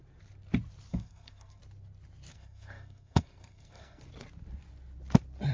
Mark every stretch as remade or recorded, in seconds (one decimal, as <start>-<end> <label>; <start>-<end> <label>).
0.0-0.9 recorded; 0.9-1.6 remade; 1.6-2.3 recorded; 2.3-4.0 remade; 4.0-5.5 recorded